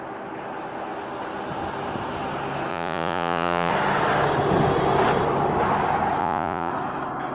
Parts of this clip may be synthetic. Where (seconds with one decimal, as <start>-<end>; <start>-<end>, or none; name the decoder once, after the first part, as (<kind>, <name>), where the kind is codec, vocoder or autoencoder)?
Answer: 2.7-3.7 (vocoder, Vocos); 6.2-6.7